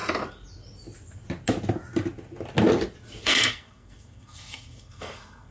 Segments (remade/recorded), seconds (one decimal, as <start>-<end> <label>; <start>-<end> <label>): 0.0-3.2 recorded; 3.2-5.5 remade